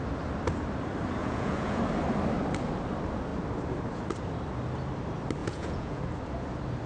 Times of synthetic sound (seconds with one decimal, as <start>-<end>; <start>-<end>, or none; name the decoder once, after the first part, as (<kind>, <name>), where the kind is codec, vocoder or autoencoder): 1.2-1.8 (vocoder, Vocos); 5.4-6.0